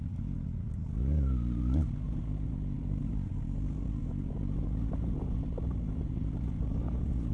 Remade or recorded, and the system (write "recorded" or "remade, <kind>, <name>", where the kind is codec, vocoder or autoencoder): remade, vocoder, BigVGAN v2